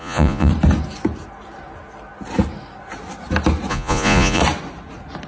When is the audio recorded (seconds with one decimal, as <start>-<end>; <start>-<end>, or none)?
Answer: 0.5-3.7; 4.4-5.3

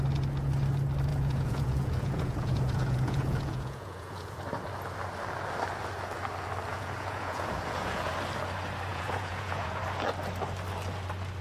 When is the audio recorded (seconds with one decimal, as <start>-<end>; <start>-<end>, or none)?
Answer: 0.0-1.1; 4.4-6.7; 8.1-8.9; 9.8-11.4